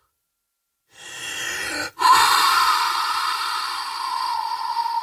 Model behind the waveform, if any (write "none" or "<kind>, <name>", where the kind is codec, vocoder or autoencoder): none